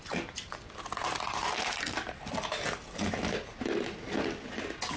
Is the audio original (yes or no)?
yes